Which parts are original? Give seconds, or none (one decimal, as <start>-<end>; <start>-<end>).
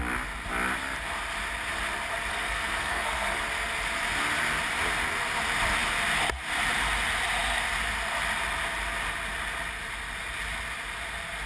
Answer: 0.0-2.3; 3.4-11.5